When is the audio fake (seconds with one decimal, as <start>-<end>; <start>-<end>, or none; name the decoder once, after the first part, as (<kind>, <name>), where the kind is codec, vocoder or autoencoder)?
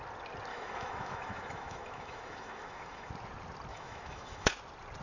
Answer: 0.5-3.1 (autoencoder, DAC-VAE); 3.7-4.5